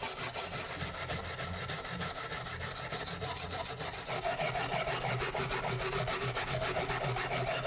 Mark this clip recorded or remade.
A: recorded